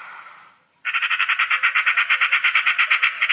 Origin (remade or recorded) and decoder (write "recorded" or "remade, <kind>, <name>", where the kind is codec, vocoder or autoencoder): remade, vocoder, BigVGAN v2